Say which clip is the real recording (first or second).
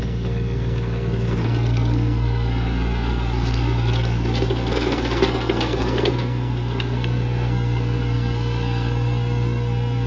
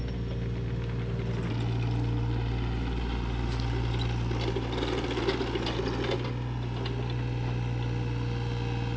second